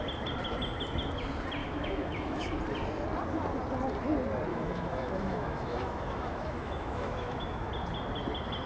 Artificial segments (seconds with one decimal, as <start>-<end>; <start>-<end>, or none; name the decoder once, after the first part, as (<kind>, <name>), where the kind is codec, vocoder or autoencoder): 1.6-2.6 (autoencoder, DAC-VAE); 4.5-7.7